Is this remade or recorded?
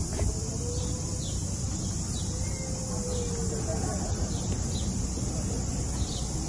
recorded